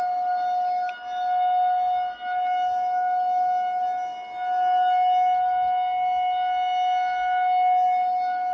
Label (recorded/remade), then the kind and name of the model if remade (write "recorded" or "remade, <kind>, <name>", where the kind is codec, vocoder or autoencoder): recorded